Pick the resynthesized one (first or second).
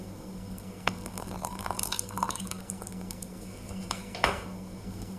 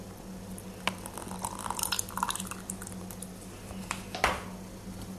first